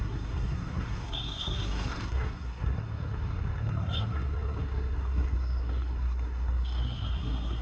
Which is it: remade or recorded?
remade